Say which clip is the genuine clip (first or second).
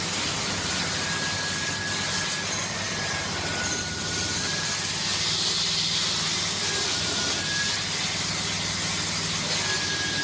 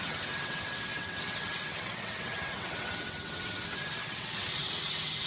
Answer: first